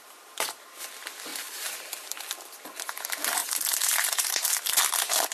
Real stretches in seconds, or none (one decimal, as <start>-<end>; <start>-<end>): 0.0-1.3; 1.8-3.4; 4.3-5.3